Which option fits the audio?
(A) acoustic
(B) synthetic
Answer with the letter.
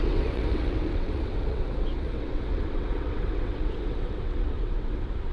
B